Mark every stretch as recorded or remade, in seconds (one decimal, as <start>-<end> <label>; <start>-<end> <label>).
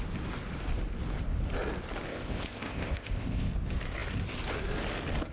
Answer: 0.0-2.1 recorded; 2.1-3.5 remade; 3.5-5.3 recorded